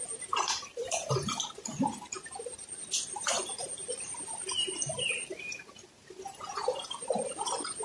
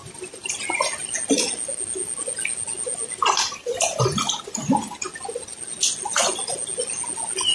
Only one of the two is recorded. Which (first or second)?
second